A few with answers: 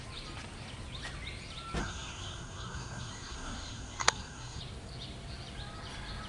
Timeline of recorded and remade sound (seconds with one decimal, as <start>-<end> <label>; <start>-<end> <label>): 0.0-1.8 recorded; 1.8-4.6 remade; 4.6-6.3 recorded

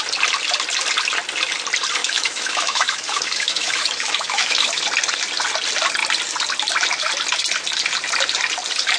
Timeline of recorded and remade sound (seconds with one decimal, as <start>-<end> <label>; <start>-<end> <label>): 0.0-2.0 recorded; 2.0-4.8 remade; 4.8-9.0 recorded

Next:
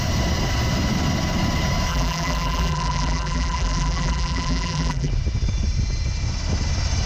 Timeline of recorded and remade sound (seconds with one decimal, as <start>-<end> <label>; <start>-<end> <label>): 0.0-1.9 recorded; 1.9-5.1 remade; 5.1-7.1 recorded